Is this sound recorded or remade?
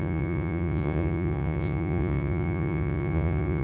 remade